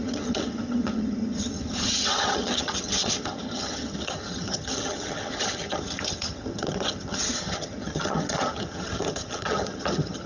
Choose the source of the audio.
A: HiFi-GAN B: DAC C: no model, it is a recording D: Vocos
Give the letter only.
A